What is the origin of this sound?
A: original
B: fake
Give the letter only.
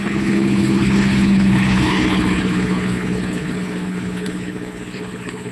B